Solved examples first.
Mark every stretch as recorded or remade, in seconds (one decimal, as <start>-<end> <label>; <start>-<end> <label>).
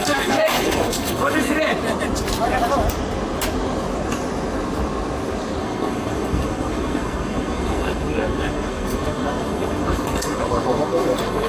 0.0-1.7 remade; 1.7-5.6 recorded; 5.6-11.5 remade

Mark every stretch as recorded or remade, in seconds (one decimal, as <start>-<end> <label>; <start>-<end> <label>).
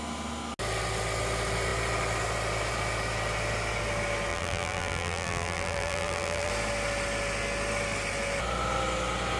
0.0-4.3 recorded; 4.3-6.5 remade; 6.5-9.4 recorded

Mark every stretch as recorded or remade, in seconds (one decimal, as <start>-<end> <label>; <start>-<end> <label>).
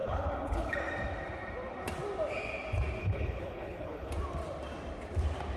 0.0-0.8 remade; 0.8-3.0 recorded; 3.0-4.1 remade; 4.1-5.6 recorded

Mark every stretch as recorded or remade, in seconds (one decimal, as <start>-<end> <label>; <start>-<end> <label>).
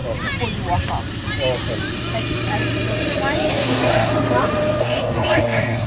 0.0-3.5 recorded; 3.5-4.1 remade; 4.1-4.8 recorded; 4.8-5.9 remade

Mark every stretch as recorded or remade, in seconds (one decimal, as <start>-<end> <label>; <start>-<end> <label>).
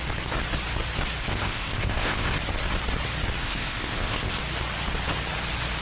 0.0-1.2 recorded; 1.2-2.3 remade; 2.3-3.4 recorded; 3.4-4.4 remade; 4.4-5.8 recorded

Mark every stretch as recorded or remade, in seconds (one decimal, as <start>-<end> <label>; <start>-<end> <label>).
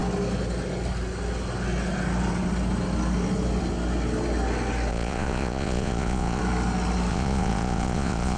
0.0-4.9 recorded; 4.9-6.4 remade; 6.4-7.1 recorded; 7.1-8.4 remade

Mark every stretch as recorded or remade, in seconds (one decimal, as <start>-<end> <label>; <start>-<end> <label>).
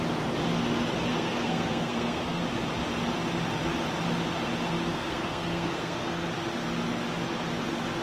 0.0-1.1 recorded; 1.1-2.4 remade; 2.4-4.9 recorded; 4.9-6.3 remade; 6.3-8.0 recorded